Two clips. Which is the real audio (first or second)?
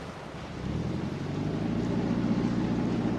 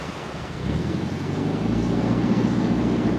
first